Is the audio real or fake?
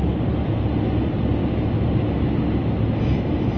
real